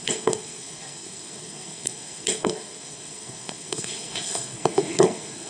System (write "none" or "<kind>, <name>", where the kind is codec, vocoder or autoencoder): codec, SNAC